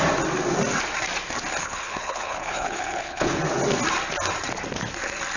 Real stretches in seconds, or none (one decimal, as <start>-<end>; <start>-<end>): 0.0-1.6; 3.4-5.4